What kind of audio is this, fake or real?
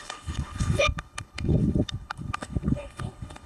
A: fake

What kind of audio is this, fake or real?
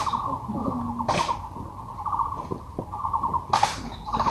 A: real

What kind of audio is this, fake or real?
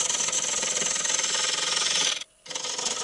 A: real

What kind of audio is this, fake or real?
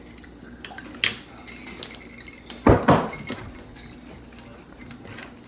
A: real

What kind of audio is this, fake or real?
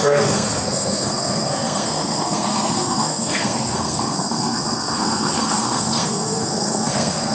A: fake